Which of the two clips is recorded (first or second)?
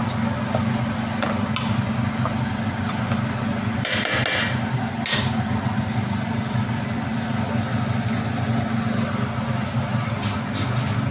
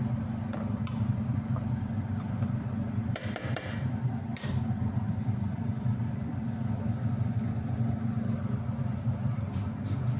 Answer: first